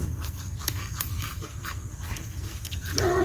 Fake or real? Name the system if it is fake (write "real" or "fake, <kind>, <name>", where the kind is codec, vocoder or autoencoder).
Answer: fake, codec, SNAC